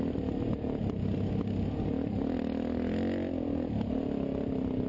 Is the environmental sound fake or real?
real